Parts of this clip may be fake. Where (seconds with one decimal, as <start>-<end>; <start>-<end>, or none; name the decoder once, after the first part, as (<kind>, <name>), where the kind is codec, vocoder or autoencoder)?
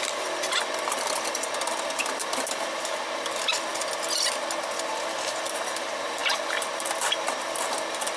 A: 0.0-3.7 (vocoder, BigVGAN v2); 4.9-8.2